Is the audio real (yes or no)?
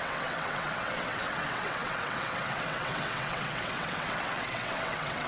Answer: no